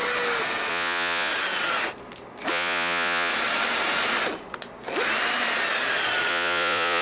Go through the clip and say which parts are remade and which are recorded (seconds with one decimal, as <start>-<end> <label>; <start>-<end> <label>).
0.0-0.7 recorded; 0.7-1.3 remade; 1.3-2.5 recorded; 2.5-3.3 remade; 3.3-6.3 recorded; 6.3-7.0 remade